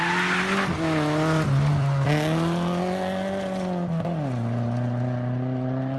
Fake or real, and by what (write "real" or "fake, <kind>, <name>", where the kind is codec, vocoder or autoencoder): real